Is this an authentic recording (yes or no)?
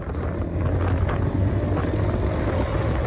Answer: yes